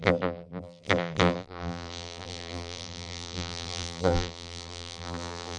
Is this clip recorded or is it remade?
remade